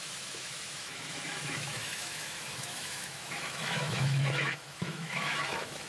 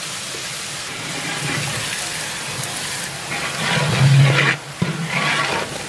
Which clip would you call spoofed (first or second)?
first